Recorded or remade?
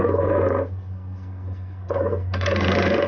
remade